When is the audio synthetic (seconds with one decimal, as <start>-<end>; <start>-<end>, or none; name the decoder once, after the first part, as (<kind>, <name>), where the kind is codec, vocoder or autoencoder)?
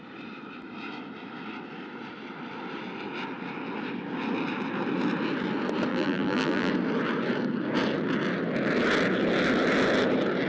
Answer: 5.9-6.7 (vocoder, BigVGAN v2)